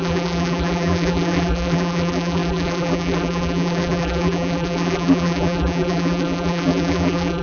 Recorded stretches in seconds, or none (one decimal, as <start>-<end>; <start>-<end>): none